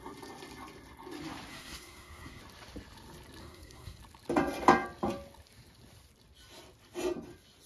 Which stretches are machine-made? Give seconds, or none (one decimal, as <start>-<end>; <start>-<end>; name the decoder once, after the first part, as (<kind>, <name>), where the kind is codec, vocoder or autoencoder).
1.5-2.4 (codec, SNAC); 3.4-4.0